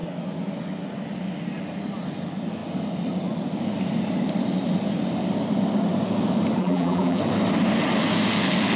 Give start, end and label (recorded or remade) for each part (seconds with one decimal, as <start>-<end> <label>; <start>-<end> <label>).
0.0-6.6 recorded; 6.6-7.2 remade; 7.2-8.8 recorded